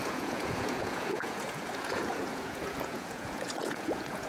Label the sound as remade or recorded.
remade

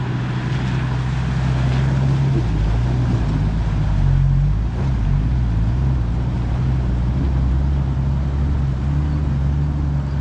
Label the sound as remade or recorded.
recorded